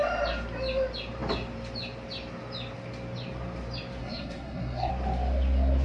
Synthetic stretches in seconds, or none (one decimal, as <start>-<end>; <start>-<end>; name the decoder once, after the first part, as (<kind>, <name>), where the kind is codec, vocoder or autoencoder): 4.0-4.9 (codec, SNAC)